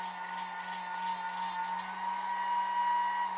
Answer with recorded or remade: recorded